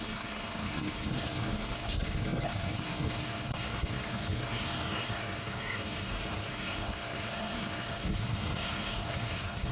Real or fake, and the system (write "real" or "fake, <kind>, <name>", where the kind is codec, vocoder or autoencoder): fake, codec, SNAC